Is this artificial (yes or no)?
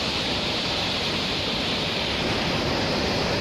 yes